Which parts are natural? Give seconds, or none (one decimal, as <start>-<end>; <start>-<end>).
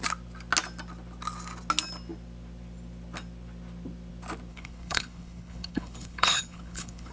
0.0-4.5